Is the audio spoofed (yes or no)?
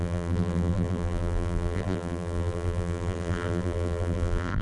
yes